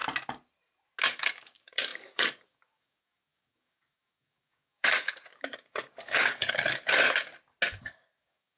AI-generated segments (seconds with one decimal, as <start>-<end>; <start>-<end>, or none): 1.0-7.3; 7.8-8.6